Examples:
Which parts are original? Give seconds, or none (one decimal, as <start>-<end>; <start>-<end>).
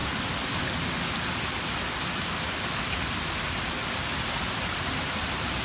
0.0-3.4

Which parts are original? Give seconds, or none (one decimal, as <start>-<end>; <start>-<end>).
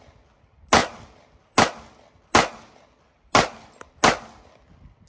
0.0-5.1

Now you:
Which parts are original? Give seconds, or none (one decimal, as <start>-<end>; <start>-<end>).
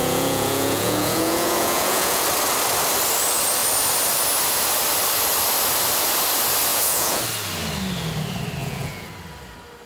2.2-6.7; 7.2-8.6; 9.1-9.9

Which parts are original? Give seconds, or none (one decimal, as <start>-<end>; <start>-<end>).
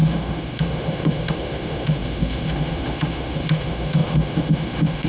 none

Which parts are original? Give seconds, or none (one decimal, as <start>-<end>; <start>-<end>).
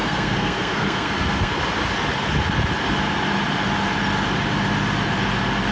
1.5-5.7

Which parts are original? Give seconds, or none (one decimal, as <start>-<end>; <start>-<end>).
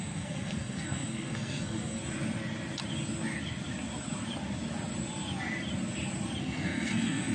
2.0-6.4